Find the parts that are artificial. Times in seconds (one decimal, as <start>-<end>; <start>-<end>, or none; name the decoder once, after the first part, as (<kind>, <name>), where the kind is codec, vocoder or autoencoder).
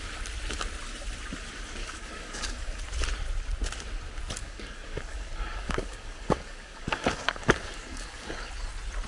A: 1.8-2.8 (codec, DAC); 4.4-8.5